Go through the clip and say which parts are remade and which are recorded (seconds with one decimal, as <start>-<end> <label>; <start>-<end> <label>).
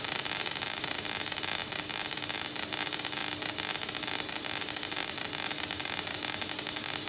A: 0.0-7.1 recorded